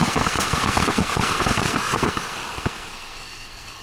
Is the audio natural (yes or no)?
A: no